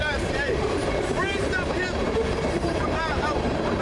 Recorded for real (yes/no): no